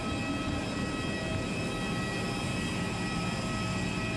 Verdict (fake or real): real